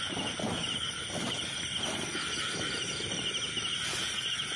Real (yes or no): yes